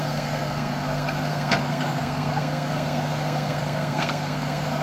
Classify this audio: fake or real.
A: fake